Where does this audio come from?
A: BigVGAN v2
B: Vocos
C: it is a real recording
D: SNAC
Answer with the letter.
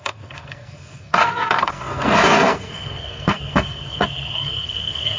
D